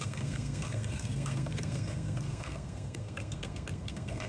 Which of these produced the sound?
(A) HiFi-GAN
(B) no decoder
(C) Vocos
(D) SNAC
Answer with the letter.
D